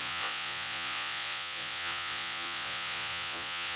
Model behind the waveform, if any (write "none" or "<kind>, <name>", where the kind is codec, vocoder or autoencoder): vocoder, Vocos